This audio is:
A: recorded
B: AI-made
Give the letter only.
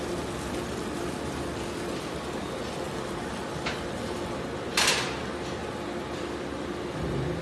A